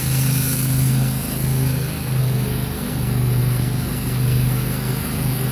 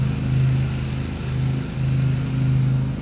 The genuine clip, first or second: second